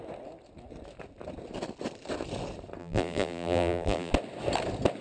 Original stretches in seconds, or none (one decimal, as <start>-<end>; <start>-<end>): 0.0-2.8; 4.1-5.0